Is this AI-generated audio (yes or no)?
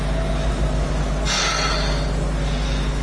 no